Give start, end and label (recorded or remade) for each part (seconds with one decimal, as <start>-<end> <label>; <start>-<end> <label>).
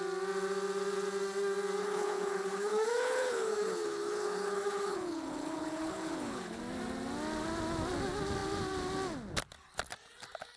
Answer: 0.0-1.8 recorded; 1.8-6.6 remade; 6.6-10.6 recorded